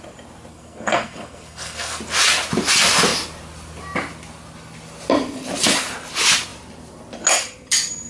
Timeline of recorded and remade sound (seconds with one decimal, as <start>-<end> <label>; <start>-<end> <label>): 0.0-0.5 recorded; 0.5-2.0 remade; 2.0-8.1 recorded